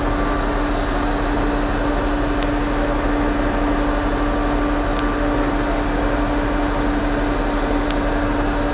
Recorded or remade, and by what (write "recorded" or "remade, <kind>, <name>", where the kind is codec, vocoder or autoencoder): recorded